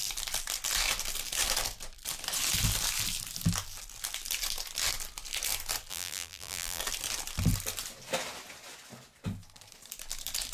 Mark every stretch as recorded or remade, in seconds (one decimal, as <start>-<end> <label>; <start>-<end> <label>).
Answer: 0.0-5.9 recorded; 5.9-6.8 remade; 6.8-10.5 recorded